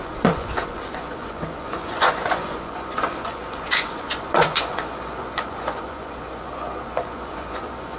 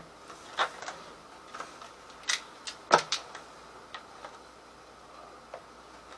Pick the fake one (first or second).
first